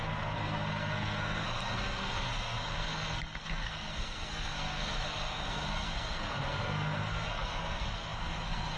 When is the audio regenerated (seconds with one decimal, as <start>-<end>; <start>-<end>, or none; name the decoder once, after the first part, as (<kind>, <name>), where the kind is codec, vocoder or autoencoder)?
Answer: 0.0-8.8 (codec, SNAC)